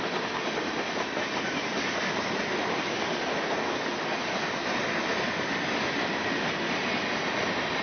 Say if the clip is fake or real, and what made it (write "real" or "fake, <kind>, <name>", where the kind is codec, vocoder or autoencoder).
real